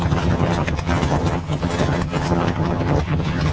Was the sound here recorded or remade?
remade